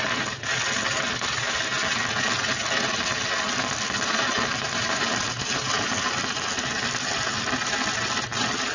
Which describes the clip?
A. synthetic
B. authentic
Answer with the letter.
B